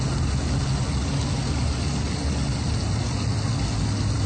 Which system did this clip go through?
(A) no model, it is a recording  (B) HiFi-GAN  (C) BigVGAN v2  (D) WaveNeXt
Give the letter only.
A